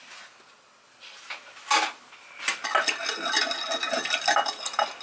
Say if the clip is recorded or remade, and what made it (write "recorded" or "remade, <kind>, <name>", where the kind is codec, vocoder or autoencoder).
recorded